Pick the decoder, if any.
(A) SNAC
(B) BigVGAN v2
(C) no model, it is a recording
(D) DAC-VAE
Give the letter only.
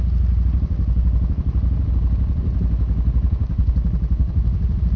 C